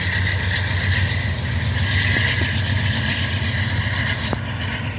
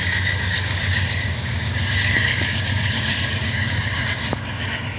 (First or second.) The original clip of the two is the first